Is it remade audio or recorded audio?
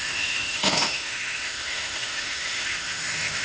remade